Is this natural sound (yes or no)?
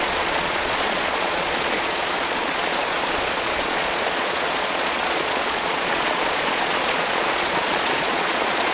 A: no